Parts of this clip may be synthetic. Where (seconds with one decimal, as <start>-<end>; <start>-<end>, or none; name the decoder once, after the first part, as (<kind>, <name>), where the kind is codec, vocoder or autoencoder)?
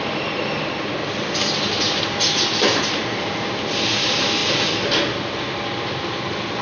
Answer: none